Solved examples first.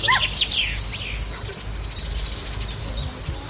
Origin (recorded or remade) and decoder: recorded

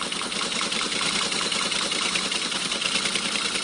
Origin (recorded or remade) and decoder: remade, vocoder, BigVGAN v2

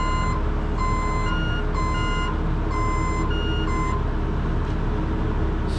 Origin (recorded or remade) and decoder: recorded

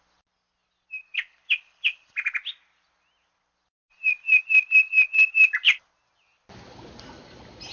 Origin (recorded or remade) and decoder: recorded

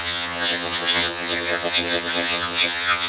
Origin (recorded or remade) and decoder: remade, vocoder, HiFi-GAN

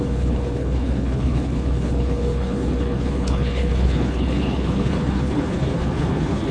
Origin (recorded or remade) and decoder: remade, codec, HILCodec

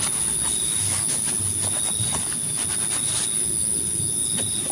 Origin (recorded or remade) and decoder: recorded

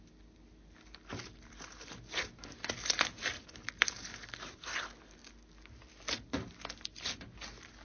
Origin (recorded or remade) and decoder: recorded